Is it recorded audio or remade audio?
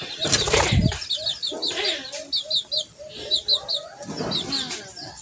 recorded